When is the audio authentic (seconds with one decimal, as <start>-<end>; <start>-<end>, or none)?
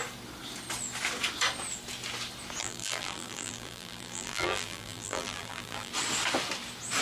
0.0-2.6; 5.9-7.0